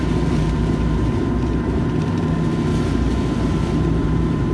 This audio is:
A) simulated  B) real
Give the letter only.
A